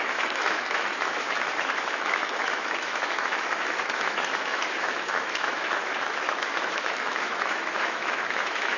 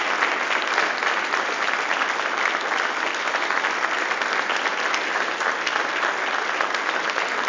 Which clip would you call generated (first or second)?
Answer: first